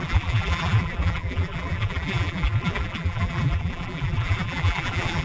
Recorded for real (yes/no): no